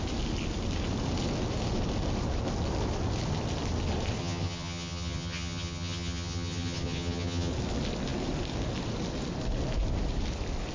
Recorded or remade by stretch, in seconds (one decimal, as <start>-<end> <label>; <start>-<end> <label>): 0.0-4.2 recorded; 4.2-7.5 remade; 7.5-10.7 recorded